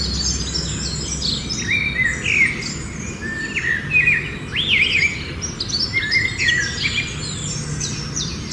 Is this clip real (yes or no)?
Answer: yes